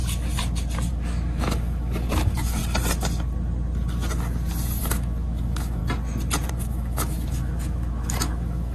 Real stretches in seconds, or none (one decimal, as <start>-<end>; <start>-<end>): 0.0-0.9; 2.6-4.8; 5.8-6.5